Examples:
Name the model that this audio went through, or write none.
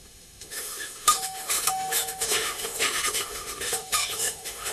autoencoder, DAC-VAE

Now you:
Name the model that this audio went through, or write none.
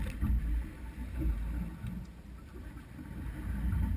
none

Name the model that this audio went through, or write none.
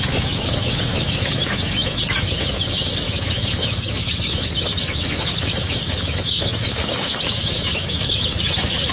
autoencoder, DAC-VAE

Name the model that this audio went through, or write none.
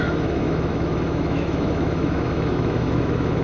autoencoder, DAC-VAE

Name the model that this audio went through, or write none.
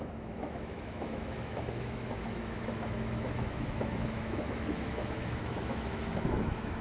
autoencoder, DAC-VAE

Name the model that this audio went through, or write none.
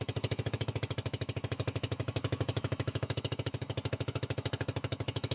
autoencoder, DAC-VAE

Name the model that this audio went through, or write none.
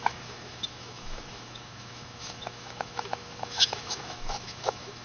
autoencoder, DAC-VAE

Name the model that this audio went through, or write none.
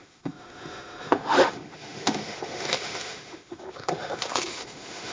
autoencoder, DAC-VAE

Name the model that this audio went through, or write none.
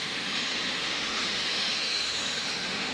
autoencoder, DAC-VAE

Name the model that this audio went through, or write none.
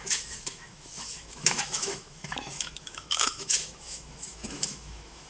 autoencoder, DAC-VAE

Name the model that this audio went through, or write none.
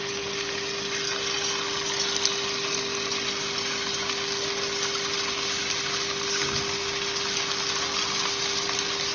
none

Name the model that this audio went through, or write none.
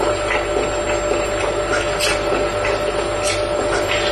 none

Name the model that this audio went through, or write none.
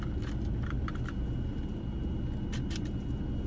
none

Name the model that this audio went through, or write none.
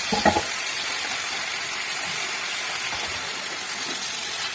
none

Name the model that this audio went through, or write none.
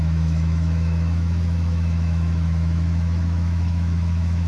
autoencoder, DAC-VAE